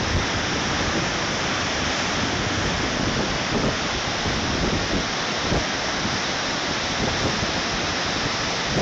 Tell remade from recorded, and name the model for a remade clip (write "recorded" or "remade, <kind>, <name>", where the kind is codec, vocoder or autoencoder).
recorded